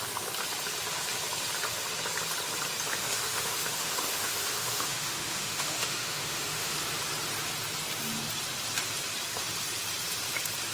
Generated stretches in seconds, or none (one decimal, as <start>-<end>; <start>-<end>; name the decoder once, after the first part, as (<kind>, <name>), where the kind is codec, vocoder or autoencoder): 2.9-6.7 (autoencoder, DAC-VAE)